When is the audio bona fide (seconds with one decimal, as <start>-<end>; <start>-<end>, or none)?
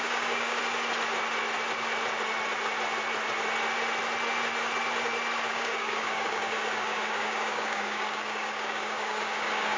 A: 0.6-5.5